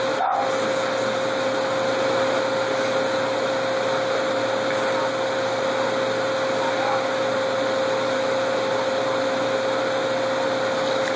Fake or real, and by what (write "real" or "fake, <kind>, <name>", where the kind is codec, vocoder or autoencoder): real